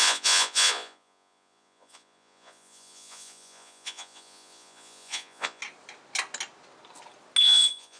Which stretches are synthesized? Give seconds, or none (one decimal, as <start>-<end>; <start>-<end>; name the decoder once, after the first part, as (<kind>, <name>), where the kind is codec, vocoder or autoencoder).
0.0-5.6 (vocoder, Vocos); 7.4-8.0